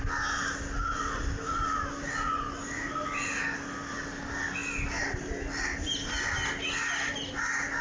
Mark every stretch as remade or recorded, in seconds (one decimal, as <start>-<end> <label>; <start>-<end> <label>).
0.0-7.8 recorded